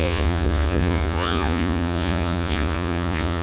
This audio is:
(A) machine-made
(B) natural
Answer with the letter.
A